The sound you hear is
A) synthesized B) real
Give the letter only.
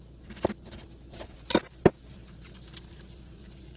B